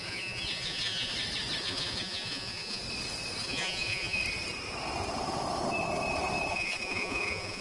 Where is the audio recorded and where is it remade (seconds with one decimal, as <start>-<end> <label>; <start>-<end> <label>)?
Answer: 0.0-1.1 remade; 1.1-1.6 recorded; 1.6-2.8 remade; 2.8-3.4 recorded; 3.4-4.2 remade; 4.2-6.5 recorded; 6.5-7.6 remade